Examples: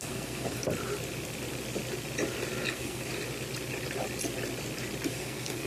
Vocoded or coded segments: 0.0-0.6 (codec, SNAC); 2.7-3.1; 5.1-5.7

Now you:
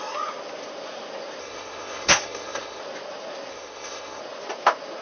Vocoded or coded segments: 1.4-2.8 (codec, SNAC); 3.5-4.2

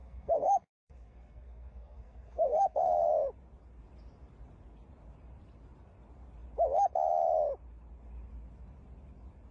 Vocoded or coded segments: 0.0-3.1 (codec, SNAC)